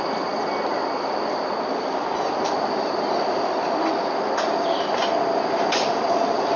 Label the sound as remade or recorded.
recorded